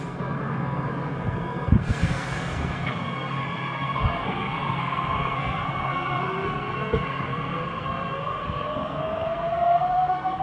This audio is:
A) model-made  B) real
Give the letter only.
A